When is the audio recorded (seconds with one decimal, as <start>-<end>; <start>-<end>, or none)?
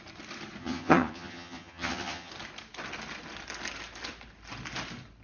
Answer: 0.0-0.6; 2.3-5.2